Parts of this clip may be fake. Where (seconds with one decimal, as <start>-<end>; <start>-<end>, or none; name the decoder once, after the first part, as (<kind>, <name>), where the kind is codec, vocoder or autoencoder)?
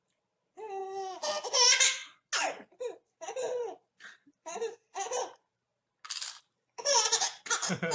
0.0-0.8 (vocoder, BigVGAN v2); 1.4-2.0; 3.1-5.7; 6.4-7.9